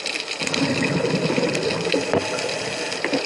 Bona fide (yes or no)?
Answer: yes